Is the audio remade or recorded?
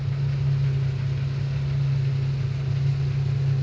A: recorded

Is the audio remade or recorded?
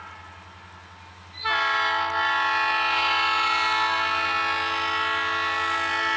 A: recorded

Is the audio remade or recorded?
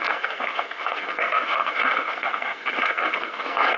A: remade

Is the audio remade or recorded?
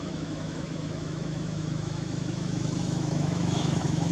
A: remade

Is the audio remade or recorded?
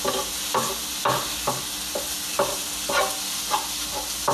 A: recorded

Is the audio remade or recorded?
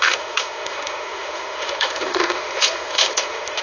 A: remade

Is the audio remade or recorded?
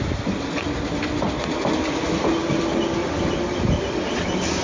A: recorded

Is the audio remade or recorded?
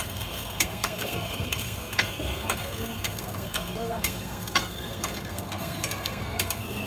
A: remade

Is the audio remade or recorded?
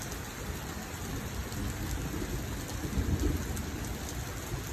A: recorded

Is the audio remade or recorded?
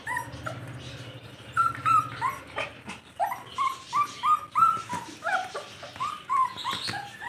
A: recorded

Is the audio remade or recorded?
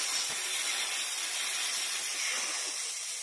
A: recorded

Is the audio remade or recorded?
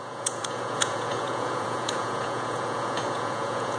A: remade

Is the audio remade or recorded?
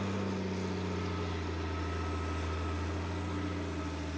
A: recorded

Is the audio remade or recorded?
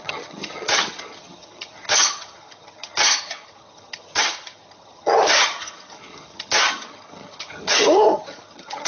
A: remade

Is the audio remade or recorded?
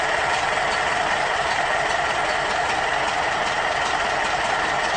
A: recorded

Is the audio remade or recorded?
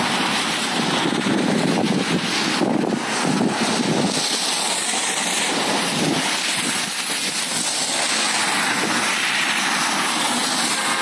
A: recorded